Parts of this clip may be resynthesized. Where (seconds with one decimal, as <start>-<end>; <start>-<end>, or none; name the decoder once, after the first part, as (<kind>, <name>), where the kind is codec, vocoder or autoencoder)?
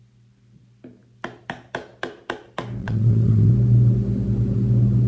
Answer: 2.8-3.5 (vocoder, WaveNeXt)